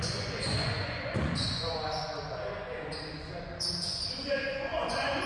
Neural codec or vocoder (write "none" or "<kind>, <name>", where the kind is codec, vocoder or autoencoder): vocoder, Vocos